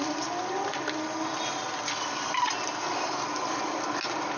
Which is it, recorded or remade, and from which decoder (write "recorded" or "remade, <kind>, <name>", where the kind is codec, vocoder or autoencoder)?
recorded